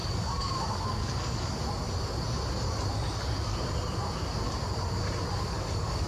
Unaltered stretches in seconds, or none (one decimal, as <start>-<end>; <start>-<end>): 1.6-5.3